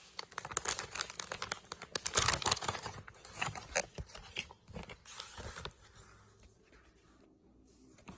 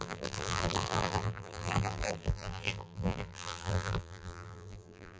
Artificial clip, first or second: second